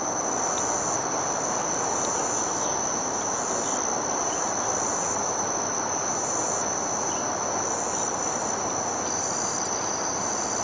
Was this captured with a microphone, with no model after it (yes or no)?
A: yes